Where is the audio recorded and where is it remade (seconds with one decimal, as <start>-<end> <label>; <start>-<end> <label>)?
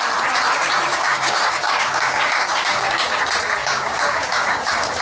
0.0-0.9 recorded; 0.9-3.2 remade; 3.2-3.6 recorded; 3.6-5.0 remade